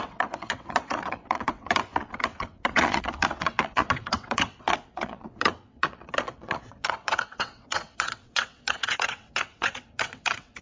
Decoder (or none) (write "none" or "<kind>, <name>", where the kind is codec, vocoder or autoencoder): vocoder, WaveNeXt